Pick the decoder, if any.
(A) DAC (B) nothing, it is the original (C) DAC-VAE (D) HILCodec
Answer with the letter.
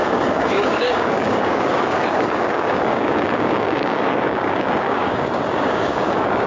A